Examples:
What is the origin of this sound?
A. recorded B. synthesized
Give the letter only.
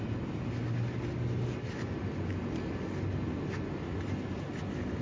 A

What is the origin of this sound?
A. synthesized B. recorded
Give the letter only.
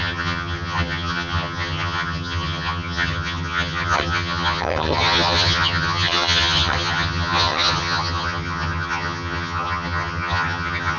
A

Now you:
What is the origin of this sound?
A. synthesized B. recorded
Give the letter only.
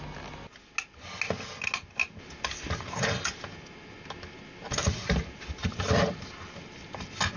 B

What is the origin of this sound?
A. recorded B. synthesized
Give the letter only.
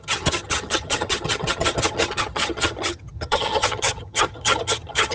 B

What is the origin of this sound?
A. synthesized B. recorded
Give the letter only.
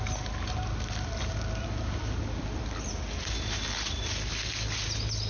B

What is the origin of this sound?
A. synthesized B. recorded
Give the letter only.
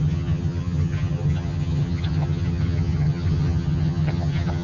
A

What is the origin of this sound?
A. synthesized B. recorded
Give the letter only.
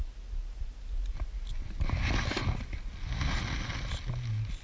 B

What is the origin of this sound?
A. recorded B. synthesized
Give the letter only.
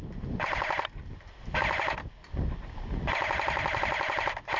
A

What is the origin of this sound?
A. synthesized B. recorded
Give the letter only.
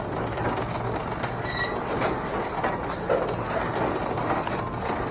B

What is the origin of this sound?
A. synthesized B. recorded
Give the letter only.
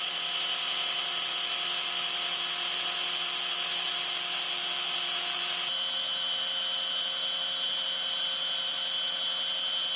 B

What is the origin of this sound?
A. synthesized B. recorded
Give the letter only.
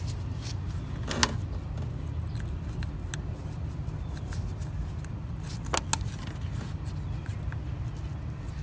B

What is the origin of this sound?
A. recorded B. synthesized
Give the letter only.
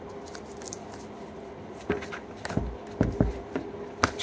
A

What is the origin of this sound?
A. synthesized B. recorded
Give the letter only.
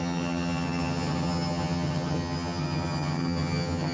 A